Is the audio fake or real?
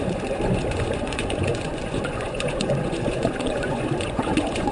fake